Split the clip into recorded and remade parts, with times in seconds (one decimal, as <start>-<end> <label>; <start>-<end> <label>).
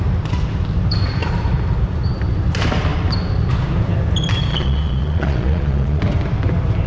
0.0-4.5 recorded; 4.5-6.0 remade; 6.0-6.9 recorded